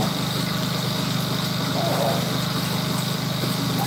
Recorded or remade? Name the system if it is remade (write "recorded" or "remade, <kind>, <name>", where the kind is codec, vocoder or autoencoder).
recorded